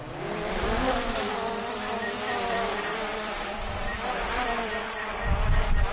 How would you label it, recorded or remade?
remade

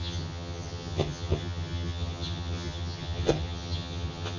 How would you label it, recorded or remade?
remade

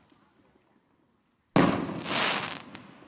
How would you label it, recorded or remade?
recorded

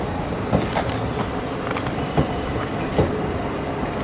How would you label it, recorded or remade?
remade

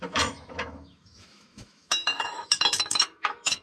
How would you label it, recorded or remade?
remade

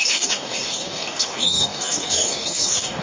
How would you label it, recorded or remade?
remade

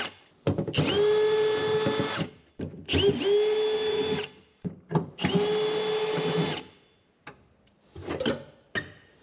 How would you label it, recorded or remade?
recorded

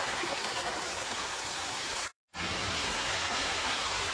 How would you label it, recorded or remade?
remade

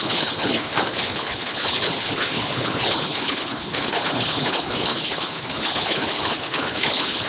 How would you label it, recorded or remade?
remade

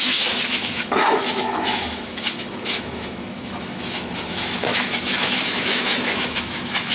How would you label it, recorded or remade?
remade